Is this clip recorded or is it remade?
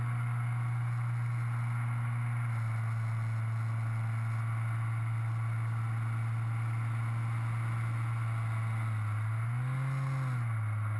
recorded